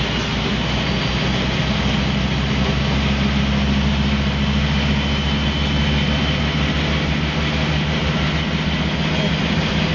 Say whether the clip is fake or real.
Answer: real